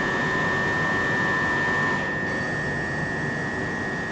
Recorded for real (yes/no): yes